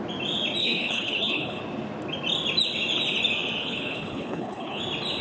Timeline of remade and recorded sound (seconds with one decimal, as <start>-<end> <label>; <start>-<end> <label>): 0.0-0.6 recorded; 0.6-1.6 remade; 1.6-3.6 recorded; 3.6-4.8 remade; 4.8-5.2 recorded